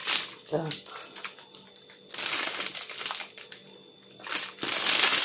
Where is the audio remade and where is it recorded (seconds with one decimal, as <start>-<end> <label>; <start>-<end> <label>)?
0.0-5.2 recorded